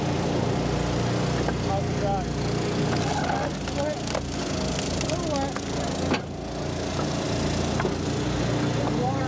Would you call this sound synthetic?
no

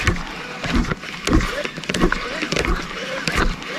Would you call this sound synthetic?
no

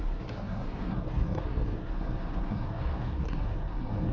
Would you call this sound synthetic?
yes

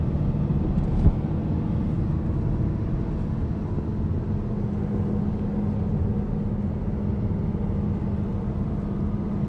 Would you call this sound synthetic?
no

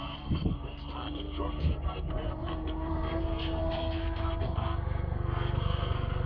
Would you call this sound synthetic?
yes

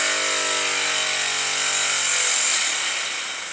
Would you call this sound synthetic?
no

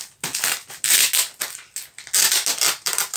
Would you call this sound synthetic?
no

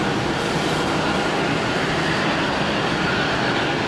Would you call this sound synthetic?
no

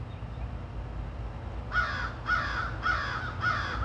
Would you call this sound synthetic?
no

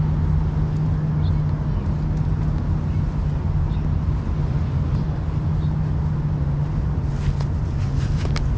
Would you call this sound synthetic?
no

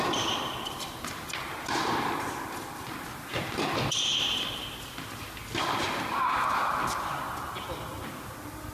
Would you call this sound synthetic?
no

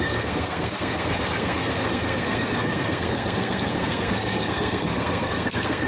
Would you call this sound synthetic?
yes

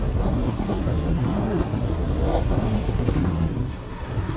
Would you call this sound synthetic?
yes